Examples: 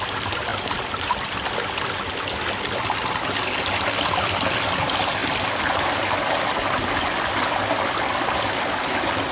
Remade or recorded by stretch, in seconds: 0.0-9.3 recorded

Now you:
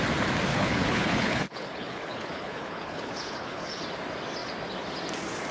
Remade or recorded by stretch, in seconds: 0.0-0.5 recorded; 0.5-3.8 remade; 3.8-5.5 recorded

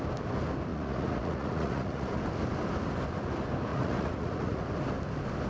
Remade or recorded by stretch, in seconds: 0.0-0.7 recorded; 0.7-2.1 remade; 2.1-3.7 recorded; 3.7-4.6 remade; 4.6-5.5 recorded